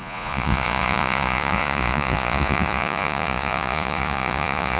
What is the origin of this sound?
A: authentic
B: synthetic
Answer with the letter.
B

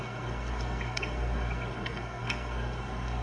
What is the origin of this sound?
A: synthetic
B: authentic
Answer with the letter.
A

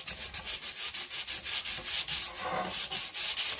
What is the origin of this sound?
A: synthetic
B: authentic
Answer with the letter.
B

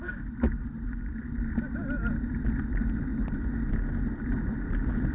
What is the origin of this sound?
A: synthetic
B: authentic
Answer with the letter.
B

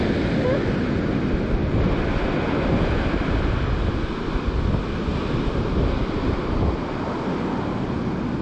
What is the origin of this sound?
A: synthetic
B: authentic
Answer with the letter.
B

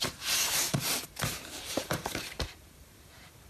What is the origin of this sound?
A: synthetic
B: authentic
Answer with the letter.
A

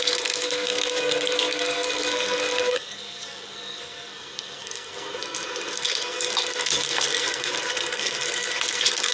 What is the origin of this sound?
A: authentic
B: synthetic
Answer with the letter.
B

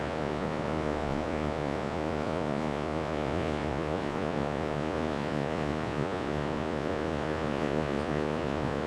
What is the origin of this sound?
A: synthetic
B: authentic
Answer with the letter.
A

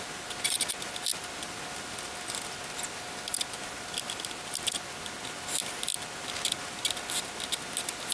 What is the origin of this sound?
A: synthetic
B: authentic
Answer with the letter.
B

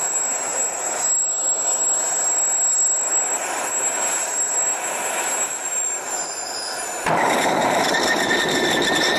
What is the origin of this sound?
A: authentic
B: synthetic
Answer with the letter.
B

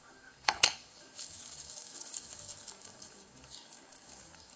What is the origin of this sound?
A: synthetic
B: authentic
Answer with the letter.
A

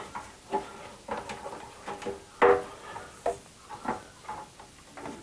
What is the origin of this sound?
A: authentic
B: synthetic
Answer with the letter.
A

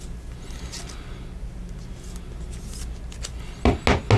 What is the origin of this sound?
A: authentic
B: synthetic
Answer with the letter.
A